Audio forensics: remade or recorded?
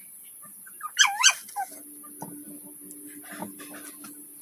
recorded